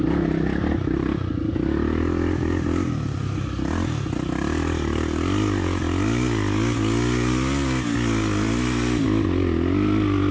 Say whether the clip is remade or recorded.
recorded